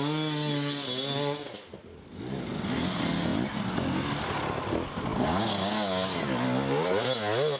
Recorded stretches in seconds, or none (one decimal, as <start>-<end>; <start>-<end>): 0.0-5.1; 6.2-7.6